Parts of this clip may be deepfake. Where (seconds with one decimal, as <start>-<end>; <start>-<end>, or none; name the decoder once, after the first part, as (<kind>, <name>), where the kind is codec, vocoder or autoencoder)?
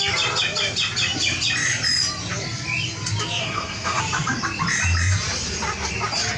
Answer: 3.4-4.0 (codec, SNAC)